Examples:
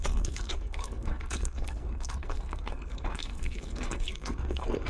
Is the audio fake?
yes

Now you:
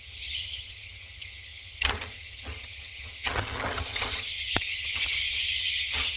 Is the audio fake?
yes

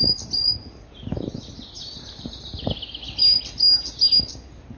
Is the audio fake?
no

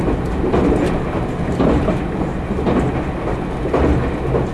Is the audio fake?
no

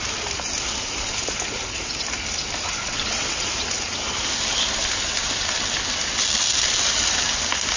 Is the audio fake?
no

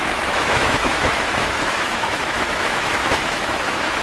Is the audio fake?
yes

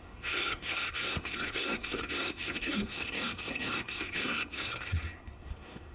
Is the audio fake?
yes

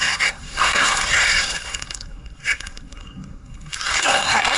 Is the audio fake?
yes